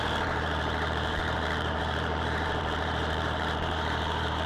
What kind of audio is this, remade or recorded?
remade